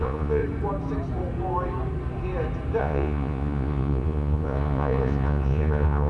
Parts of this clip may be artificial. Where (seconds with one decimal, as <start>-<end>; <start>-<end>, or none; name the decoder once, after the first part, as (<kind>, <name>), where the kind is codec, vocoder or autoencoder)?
0.0-0.4 (vocoder, Vocos); 2.8-6.1